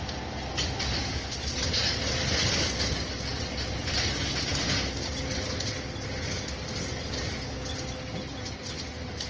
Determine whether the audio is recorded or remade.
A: recorded